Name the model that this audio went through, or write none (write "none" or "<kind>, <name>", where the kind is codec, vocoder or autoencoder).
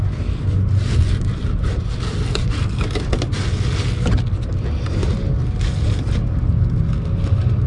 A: none